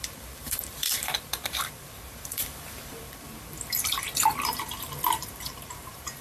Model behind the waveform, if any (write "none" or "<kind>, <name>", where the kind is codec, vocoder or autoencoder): vocoder, BigVGAN v2